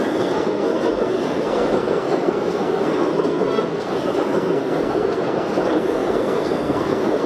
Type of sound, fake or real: fake